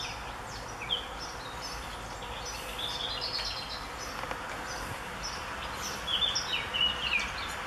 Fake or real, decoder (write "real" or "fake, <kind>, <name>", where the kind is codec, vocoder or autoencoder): real